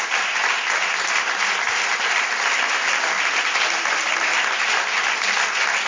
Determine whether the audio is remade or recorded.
recorded